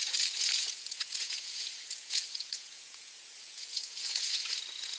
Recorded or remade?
remade